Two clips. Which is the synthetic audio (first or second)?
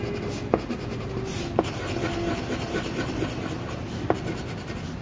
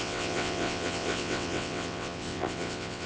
second